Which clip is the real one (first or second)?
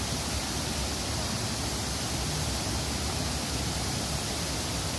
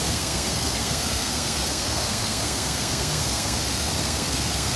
first